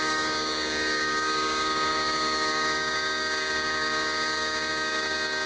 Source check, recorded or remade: remade